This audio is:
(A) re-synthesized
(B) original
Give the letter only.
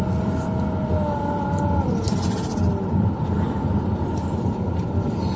B